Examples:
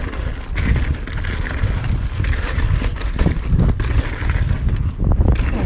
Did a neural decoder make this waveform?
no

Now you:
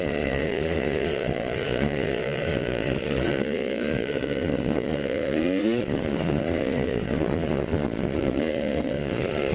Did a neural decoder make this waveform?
yes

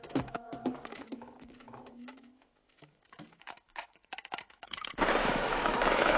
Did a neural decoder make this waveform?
yes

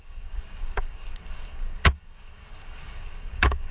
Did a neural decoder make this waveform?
yes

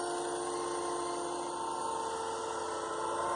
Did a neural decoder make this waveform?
no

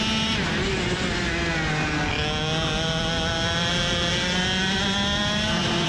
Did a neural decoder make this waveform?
no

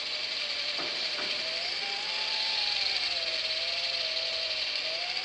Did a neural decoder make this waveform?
no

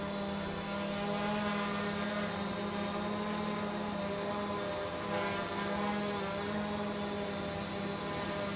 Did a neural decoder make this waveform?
no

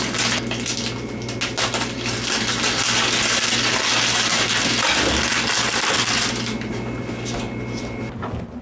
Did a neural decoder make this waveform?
no